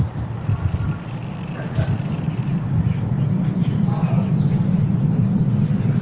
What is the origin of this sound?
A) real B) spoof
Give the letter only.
B